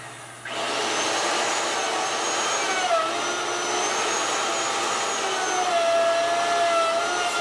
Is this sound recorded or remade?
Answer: recorded